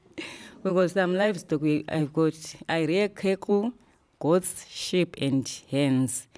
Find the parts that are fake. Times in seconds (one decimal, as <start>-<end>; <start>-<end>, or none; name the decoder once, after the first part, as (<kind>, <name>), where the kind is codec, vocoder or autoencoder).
0.7-2.0 (vocoder, BigVGAN v2)